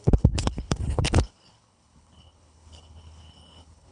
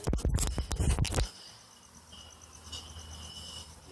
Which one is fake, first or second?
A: first